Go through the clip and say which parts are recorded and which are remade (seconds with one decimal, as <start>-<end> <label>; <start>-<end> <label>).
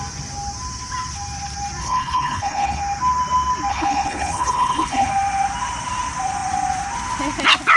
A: 0.0-1.8 recorded; 1.8-2.8 remade; 2.8-3.7 recorded; 3.7-5.1 remade; 5.1-7.8 recorded